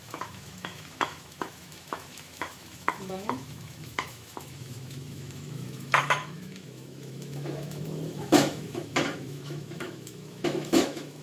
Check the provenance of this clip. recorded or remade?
remade